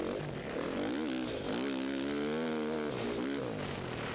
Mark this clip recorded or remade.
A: recorded